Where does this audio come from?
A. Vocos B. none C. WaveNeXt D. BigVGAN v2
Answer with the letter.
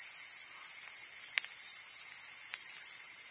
B